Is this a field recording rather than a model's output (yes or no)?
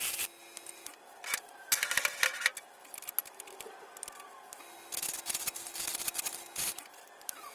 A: yes